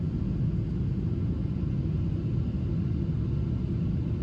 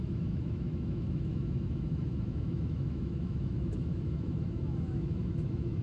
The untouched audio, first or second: first